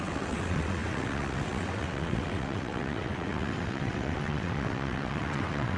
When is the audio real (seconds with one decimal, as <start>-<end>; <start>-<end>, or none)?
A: none